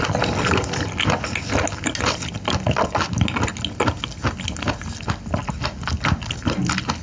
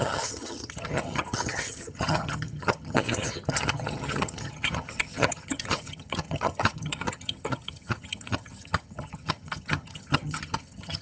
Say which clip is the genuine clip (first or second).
first